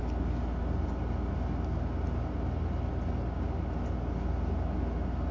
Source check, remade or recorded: recorded